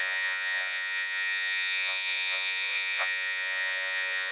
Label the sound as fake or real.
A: fake